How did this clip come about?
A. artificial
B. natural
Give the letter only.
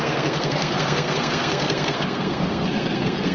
A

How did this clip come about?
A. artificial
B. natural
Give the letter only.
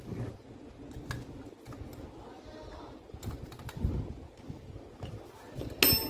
B